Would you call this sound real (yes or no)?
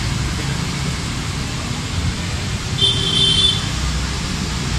yes